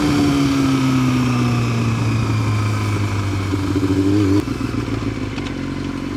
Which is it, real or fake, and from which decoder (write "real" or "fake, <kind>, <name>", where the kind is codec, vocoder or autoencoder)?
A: real